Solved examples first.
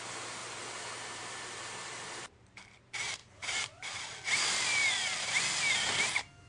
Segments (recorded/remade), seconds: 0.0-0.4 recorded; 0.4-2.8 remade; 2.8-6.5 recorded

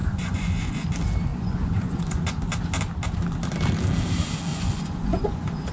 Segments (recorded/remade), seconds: 0.0-0.9 remade; 0.9-1.3 recorded; 1.3-2.4 remade; 2.4-4.5 recorded; 4.5-5.7 remade

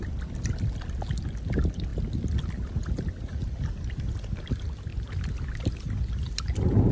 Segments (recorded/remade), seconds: 0.0-6.9 recorded

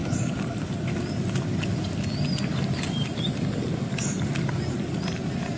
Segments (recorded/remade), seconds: 0.0-5.6 recorded

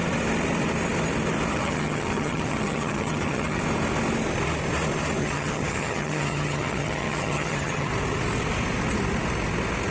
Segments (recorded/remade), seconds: 0.0-1.5 recorded; 1.5-3.6 remade; 3.6-5.2 recorded; 5.2-7.9 remade; 7.9-9.9 recorded

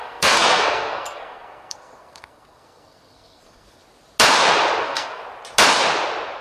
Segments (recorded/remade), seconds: 0.0-3.8 remade; 3.8-4.8 recorded; 4.8-5.2 remade; 5.2-6.4 recorded

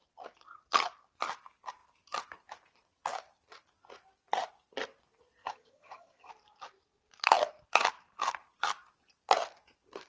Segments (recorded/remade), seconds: 0.0-5.4 recorded; 5.4-6.3 remade; 6.3-10.1 recorded

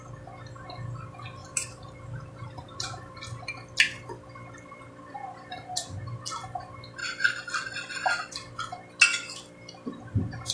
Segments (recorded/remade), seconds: 0.0-1.4 recorded; 1.4-3.4 remade; 3.4-10.5 recorded